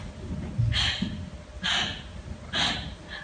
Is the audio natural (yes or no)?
yes